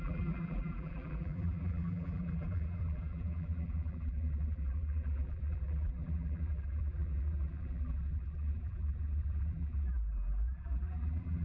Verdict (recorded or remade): remade